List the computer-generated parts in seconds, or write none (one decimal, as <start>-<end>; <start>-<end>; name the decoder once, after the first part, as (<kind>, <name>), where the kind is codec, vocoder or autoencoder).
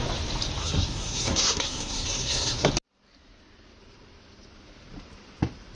0.6-2.7 (codec, SNAC)